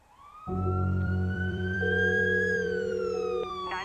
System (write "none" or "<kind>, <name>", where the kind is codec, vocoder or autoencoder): vocoder, BigVGAN v2